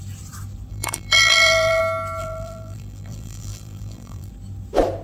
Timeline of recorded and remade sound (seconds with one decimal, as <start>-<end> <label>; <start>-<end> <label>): 0.0-0.7 recorded; 0.7-1.8 remade; 1.8-2.2 recorded; 2.2-4.3 remade; 4.3-5.0 recorded